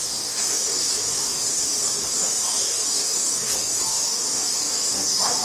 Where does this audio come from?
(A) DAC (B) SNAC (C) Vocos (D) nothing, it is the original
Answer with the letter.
A